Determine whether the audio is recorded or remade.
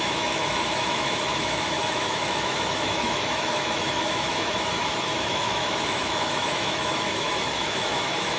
remade